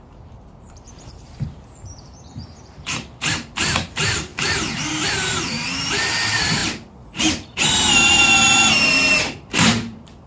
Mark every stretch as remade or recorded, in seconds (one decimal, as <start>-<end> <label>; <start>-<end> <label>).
0.0-4.3 remade; 4.3-4.9 recorded; 4.9-10.3 remade

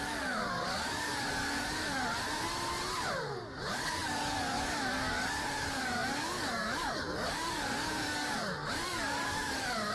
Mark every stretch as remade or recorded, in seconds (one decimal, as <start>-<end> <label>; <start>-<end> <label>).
0.0-1.9 remade; 1.9-3.1 recorded; 3.1-9.9 remade

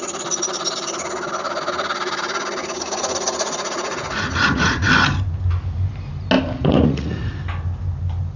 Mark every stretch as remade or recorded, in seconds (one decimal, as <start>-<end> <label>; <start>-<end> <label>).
0.0-2.6 recorded; 2.6-4.9 remade; 4.9-6.6 recorded; 6.6-7.3 remade; 7.3-8.4 recorded